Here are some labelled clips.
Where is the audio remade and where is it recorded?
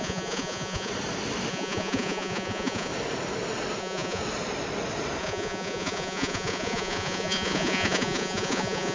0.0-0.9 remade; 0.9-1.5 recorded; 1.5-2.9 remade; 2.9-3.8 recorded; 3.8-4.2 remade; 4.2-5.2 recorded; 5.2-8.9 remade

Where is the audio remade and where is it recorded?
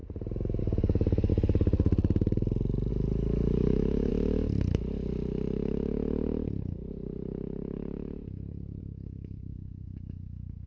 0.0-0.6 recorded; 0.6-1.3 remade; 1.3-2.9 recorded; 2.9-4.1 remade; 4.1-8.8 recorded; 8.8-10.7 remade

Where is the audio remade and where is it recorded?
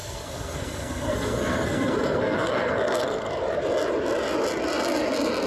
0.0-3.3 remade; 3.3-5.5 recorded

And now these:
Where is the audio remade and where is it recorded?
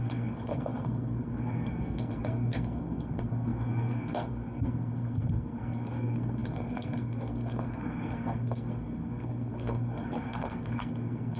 0.0-11.4 remade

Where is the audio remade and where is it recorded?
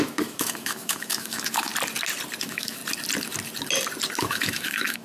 0.0-1.7 remade; 1.7-2.4 recorded; 2.4-2.8 remade; 2.8-4.2 recorded; 4.2-5.0 remade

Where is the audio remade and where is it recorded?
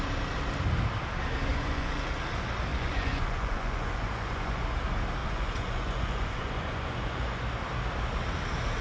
0.0-1.5 recorded; 1.5-2.2 remade; 2.2-2.7 recorded; 2.7-4.6 remade; 4.6-5.2 recorded; 5.2-7.5 remade; 7.5-8.8 recorded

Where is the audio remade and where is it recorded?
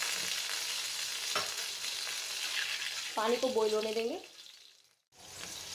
0.0-5.7 recorded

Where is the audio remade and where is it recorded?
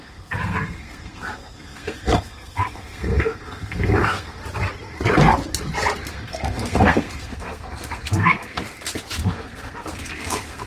0.0-4.4 remade; 4.4-6.1 recorded; 6.1-8.6 remade; 8.6-9.2 recorded; 9.2-10.7 remade